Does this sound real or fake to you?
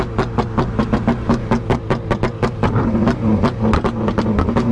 real